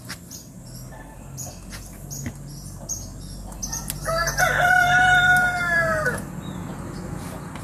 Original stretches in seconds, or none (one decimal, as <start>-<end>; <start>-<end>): 6.6-7.6